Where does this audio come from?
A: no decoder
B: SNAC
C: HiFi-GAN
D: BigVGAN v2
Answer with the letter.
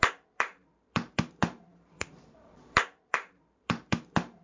D